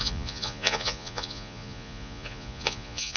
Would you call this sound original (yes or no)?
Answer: no